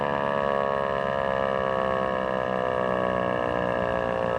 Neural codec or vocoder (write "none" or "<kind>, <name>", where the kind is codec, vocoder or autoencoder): none